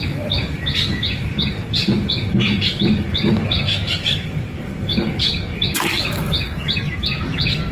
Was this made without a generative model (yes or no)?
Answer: no